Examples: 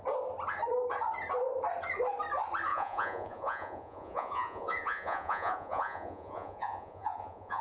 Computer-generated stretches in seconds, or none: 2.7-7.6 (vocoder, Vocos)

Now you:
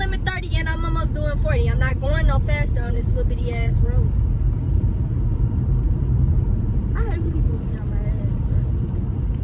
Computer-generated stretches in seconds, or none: 0.0-0.6 (vocoder, BigVGAN v2); 1.9-9.4

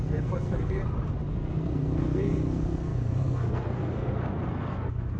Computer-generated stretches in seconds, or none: 0.0-0.8 (codec, SNAC); 1.3-5.2

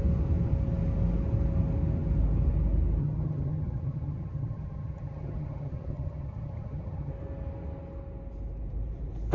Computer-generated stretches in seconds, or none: 3.0-7.1 (vocoder, HiFi-GAN)

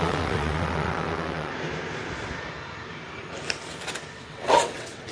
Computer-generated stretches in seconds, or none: 0.0-1.5 (vocoder, WaveNeXt); 4.1-5.1

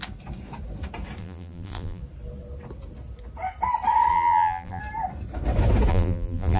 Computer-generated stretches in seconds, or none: 1.2-2.0 (vocoder, BigVGAN v2); 4.1-4.8; 5.9-6.6